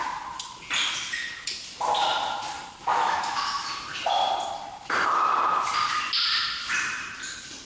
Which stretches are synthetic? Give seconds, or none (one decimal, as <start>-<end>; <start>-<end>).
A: 2.9-3.7